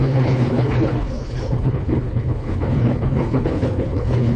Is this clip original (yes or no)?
no